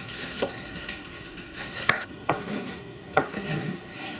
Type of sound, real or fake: fake